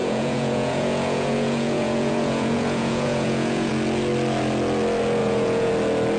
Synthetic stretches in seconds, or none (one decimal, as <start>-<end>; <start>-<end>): 0.0-3.7; 5.2-5.7